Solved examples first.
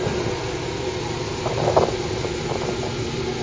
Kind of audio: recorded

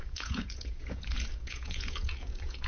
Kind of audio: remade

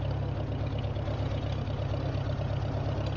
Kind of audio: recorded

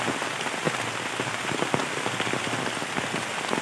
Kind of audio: recorded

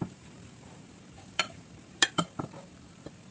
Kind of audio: remade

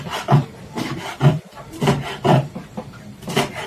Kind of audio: remade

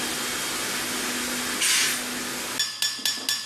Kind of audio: recorded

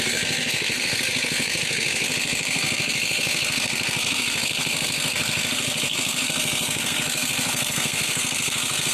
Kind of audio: remade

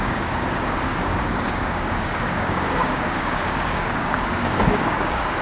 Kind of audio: remade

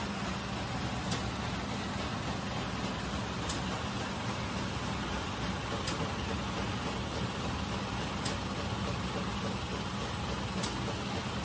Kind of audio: recorded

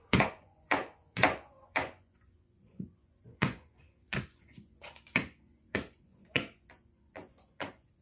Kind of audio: remade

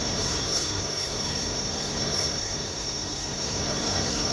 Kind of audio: remade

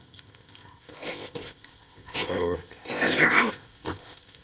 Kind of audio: remade